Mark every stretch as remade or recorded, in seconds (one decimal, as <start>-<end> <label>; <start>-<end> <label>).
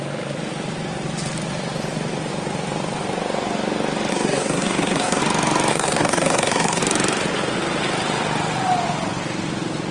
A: 0.0-4.1 recorded; 4.1-5.2 remade; 5.2-5.7 recorded; 5.7-6.8 remade; 6.8-9.9 recorded